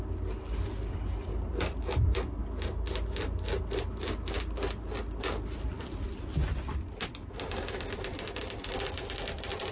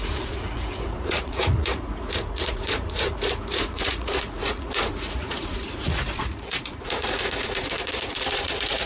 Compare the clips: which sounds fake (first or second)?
second